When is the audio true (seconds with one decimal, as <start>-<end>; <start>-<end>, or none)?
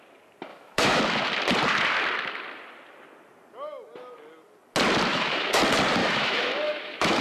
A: 0.0-0.5; 1.0-5.1; 5.6-6.0